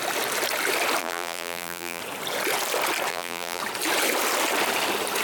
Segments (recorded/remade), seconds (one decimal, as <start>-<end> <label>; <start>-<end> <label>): 0.0-1.0 recorded; 1.0-2.0 remade; 2.0-3.1 recorded; 3.1-3.6 remade; 3.6-5.2 recorded